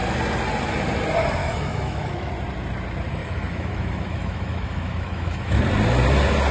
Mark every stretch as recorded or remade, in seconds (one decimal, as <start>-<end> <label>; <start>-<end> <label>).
0.0-1.4 recorded; 1.4-2.3 remade; 2.3-3.2 recorded; 3.2-5.6 remade; 5.6-6.5 recorded